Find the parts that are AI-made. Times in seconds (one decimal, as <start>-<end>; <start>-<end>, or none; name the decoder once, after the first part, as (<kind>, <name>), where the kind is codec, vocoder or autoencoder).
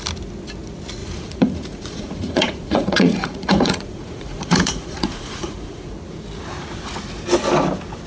1.0-5.9 (vocoder, Vocos)